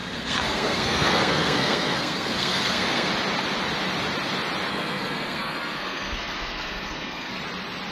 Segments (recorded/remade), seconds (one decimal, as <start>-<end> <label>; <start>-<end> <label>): 0.0-3.1 remade; 3.1-4.7 recorded; 4.7-7.4 remade; 7.4-7.9 recorded